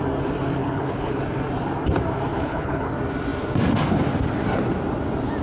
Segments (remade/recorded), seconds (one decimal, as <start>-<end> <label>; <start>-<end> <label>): 0.0-0.6 recorded; 0.6-1.2 remade; 1.2-2.3 recorded; 2.3-2.9 remade; 2.9-5.4 recorded